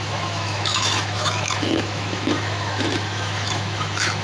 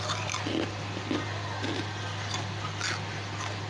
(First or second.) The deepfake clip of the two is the first